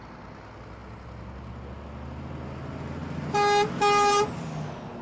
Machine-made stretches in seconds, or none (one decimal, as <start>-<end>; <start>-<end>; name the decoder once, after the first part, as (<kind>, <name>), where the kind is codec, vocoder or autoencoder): none